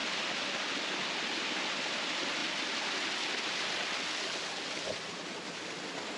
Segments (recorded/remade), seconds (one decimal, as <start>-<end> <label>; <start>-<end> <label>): 0.0-6.2 recorded